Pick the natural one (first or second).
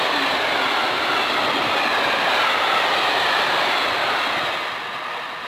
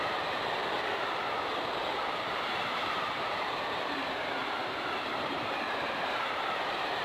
first